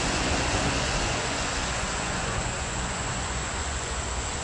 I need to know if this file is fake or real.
fake